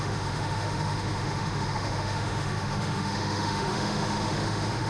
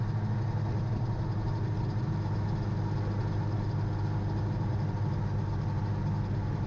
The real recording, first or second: second